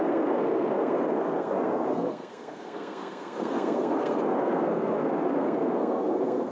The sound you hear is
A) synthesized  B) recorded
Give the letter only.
A